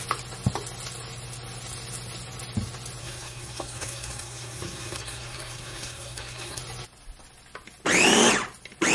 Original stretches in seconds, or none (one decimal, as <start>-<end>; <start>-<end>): 0.0-3.0; 6.6-8.9